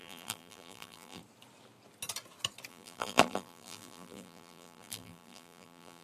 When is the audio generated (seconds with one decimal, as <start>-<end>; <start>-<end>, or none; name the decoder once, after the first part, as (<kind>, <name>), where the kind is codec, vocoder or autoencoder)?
0.0-1.2 (vocoder, BigVGAN v2); 2.7-6.0